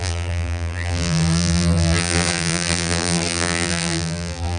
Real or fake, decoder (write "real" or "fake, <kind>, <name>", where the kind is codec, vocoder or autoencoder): fake, vocoder, BigVGAN v2